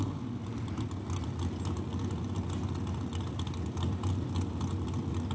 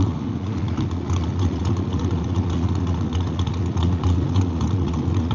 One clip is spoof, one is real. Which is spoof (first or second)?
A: second